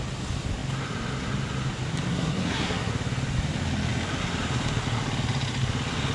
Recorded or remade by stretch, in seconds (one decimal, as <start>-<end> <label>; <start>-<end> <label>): 0.0-2.1 recorded; 2.1-2.9 remade; 2.9-6.1 recorded